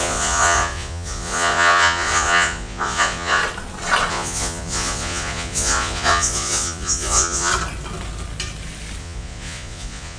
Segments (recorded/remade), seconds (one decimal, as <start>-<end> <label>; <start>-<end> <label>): 0.0-3.4 remade; 3.4-4.1 recorded; 4.1-7.5 remade; 7.5-9.0 recorded; 9.0-10.2 remade